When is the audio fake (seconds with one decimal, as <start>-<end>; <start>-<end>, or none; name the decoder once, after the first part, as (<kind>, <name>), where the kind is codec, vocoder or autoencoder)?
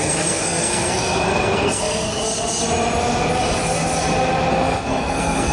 0.0-2.2 (codec, SNAC); 4.5-5.5